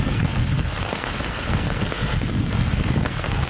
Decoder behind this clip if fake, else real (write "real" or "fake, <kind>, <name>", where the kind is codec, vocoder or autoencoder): fake, codec, SNAC